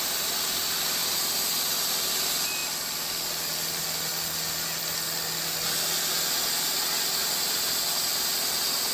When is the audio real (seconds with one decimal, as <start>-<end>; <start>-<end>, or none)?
0.0-8.9